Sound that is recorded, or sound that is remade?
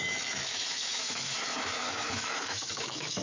remade